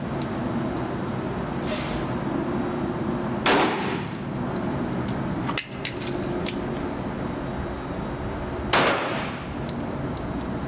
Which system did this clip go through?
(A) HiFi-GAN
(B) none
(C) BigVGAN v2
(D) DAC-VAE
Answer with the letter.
B